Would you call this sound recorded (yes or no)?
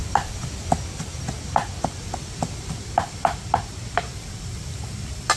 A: yes